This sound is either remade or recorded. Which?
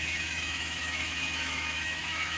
remade